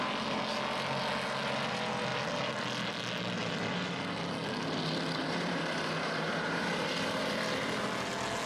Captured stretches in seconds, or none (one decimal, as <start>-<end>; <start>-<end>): 0.0-5.2; 7.8-8.5